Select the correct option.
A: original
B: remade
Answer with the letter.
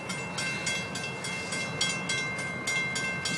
A